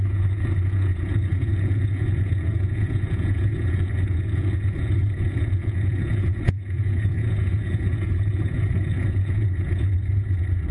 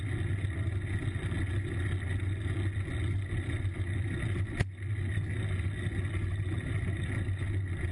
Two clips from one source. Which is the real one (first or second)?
second